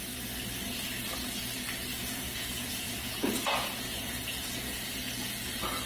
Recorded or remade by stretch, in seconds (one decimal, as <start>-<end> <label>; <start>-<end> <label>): 0.0-1.9 recorded; 1.9-4.9 remade; 4.9-5.9 recorded